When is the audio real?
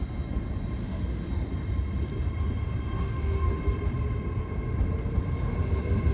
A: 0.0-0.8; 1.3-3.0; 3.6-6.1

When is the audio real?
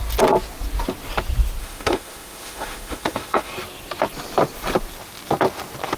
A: 0.0-1.6; 3.5-6.0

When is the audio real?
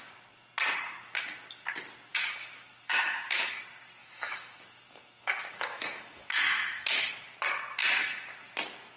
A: 0.0-2.1; 3.6-4.0; 7.1-9.0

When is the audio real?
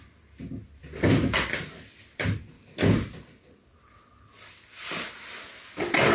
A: 0.0-6.1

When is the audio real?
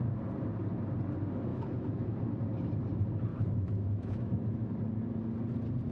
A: 0.0-1.5; 2.2-3.3; 4.7-5.9